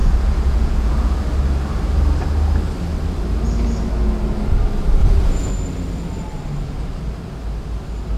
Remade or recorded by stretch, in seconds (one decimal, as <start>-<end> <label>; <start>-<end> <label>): 0.0-1.2 remade; 1.2-5.0 recorded; 5.0-5.5 remade; 5.5-8.2 recorded